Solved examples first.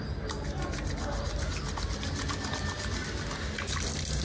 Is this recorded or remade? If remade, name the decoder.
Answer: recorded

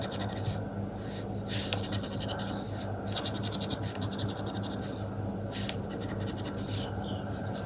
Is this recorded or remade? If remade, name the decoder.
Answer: recorded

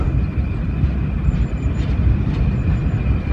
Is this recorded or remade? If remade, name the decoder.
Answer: remade, vocoder, BigVGAN v2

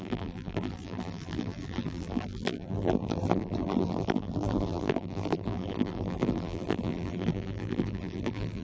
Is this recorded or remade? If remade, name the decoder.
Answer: remade, vocoder, BigVGAN v2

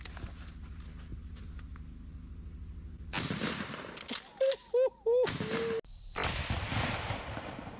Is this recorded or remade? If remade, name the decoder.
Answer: recorded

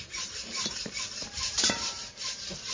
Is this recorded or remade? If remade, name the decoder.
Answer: remade, vocoder, BigVGAN v2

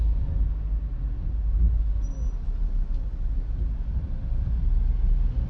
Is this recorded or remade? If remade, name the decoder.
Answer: recorded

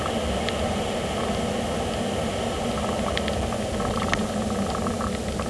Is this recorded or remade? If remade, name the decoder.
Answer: recorded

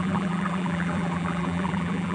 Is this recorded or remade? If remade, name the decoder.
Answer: remade, vocoder, BigVGAN v2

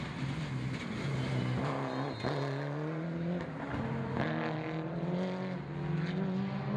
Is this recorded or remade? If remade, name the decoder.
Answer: recorded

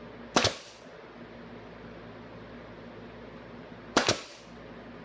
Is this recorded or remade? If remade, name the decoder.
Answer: recorded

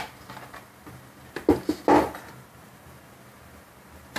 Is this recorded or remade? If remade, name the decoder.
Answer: recorded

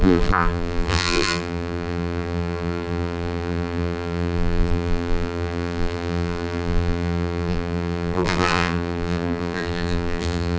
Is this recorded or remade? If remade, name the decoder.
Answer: remade, vocoder, BigVGAN v2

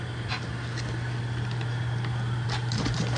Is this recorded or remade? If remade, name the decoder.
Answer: remade, vocoder, BigVGAN v2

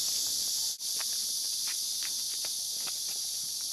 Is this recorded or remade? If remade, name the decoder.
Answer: recorded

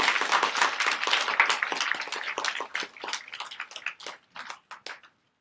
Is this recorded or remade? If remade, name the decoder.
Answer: recorded